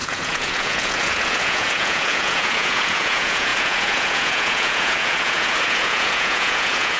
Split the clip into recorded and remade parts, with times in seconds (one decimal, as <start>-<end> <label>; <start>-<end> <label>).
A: 0.0-7.0 remade